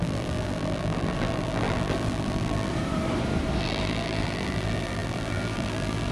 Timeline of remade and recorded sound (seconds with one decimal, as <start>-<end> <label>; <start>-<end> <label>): 0.0-2.7 remade; 2.7-3.6 recorded; 3.6-6.1 remade